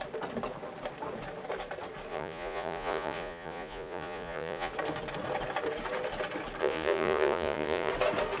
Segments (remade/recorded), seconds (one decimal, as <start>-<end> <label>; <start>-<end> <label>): 0.0-2.1 recorded; 2.1-4.7 remade; 4.7-6.6 recorded; 6.6-7.9 remade; 7.9-8.4 recorded